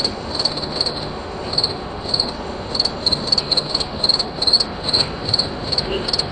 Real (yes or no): no